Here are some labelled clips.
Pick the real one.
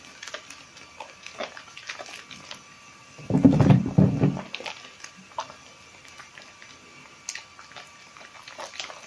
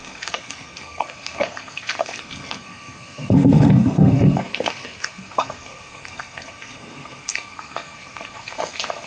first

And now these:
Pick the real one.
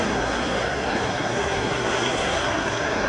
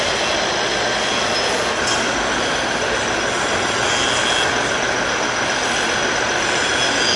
second